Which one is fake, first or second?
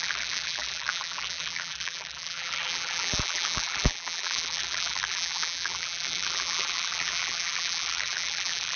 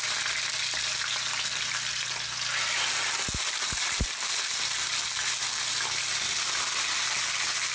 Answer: first